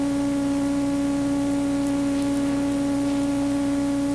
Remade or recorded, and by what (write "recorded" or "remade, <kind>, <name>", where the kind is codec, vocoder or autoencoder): recorded